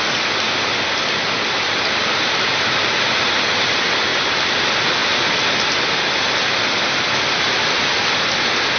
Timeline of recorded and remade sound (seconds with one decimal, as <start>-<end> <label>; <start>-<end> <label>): 0.0-4.1 recorded; 4.1-4.6 remade; 4.6-8.8 recorded

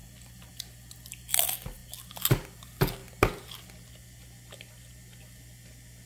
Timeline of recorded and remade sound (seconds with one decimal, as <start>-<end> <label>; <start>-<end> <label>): 0.0-6.1 recorded

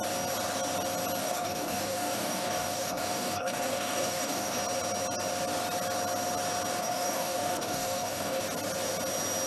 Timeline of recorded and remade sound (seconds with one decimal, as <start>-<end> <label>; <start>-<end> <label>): 0.0-1.2 recorded; 1.2-4.6 remade; 4.6-6.8 recorded; 6.8-8.4 remade; 8.4-9.5 recorded

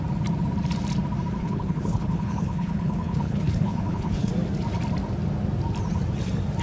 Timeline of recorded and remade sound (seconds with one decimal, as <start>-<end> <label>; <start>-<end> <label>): 0.0-1.4 recorded; 1.4-4.3 remade; 4.3-6.6 recorded

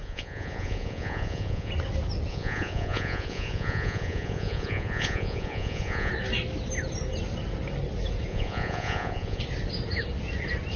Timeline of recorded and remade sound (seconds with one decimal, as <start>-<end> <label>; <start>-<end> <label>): 0.0-1.7 remade; 1.7-2.3 recorded; 2.3-6.1 remade; 6.1-8.3 recorded; 8.3-9.4 remade; 9.4-10.8 recorded

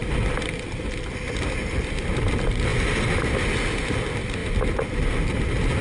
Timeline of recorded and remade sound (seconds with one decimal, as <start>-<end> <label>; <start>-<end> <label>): 0.0-5.8 recorded